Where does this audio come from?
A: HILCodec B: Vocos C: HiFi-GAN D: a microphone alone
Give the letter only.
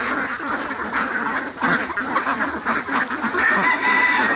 D